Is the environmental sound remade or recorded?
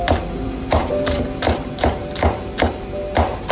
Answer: remade